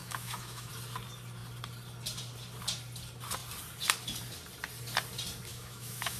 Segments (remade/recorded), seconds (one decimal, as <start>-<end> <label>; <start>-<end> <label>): 0.0-0.7 remade; 0.7-5.5 recorded; 5.5-6.2 remade